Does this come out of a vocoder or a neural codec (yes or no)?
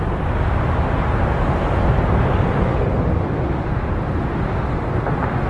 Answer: no